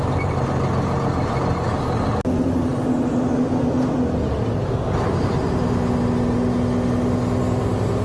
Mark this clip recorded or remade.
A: recorded